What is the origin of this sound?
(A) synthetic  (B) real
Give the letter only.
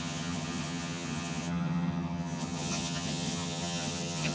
A